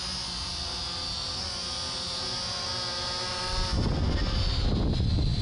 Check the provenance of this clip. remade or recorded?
recorded